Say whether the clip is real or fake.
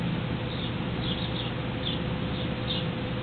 real